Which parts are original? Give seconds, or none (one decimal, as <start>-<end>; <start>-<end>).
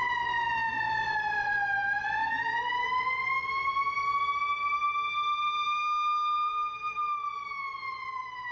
0.0-0.7; 1.6-2.2; 3.3-4.8; 7.3-8.5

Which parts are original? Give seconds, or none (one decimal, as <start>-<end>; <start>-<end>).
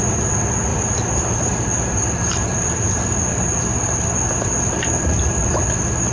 0.0-0.7; 2.7-6.1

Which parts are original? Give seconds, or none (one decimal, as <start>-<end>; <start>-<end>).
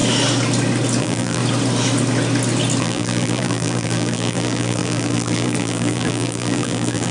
0.0-1.0; 1.4-2.8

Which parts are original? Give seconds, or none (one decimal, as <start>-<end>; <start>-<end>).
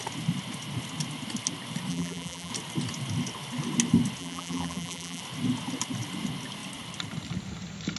0.0-1.9; 2.5-4.2; 5.2-8.0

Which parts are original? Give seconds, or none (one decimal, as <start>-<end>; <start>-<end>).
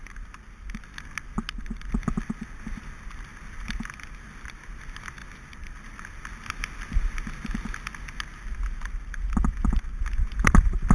0.0-10.9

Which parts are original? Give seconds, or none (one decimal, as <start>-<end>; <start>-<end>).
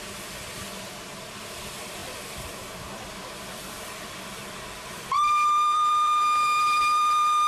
none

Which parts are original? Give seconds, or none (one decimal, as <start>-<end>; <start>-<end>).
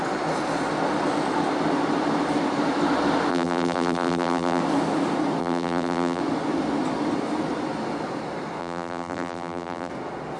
0.0-3.3; 4.6-5.4; 6.2-8.6; 9.9-10.4